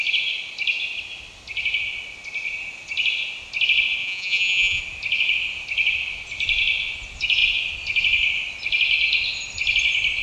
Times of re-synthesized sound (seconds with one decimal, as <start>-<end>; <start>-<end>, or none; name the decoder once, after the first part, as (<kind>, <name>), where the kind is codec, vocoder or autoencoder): 4.0-4.8 (vocoder, Vocos)